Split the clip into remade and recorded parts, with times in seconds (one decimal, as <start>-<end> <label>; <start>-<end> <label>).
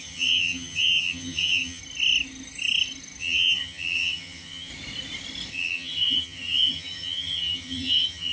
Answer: 0.0-1.8 remade; 1.8-3.2 recorded; 3.2-4.7 remade; 4.7-5.5 recorded; 5.5-8.3 remade